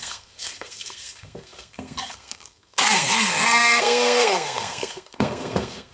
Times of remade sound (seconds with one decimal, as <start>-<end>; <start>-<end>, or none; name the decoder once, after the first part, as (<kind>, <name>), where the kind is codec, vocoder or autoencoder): 0.0-5.9 (codec, SNAC)